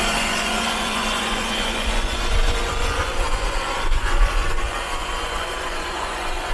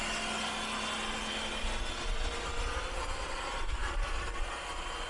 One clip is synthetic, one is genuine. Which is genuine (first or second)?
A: second